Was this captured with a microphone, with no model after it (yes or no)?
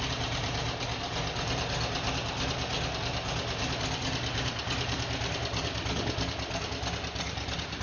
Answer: no